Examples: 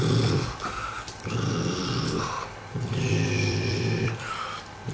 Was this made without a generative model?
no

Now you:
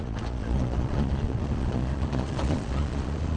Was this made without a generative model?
no